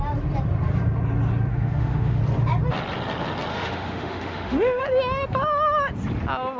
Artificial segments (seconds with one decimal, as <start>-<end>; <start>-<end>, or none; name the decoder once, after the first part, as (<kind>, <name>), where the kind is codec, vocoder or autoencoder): 1.5-2.2 (autoencoder, DAC-VAE); 3.5-4.8